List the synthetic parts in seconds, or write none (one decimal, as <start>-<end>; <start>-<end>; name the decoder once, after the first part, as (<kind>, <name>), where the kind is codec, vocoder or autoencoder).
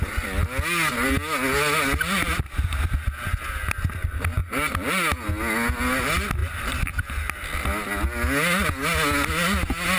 6.4-7.0 (vocoder, BigVGAN v2)